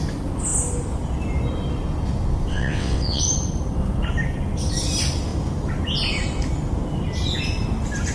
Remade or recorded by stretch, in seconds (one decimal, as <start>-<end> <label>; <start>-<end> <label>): 0.0-2.5 recorded; 2.5-3.2 remade; 3.2-8.1 recorded